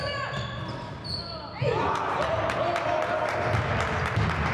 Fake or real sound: real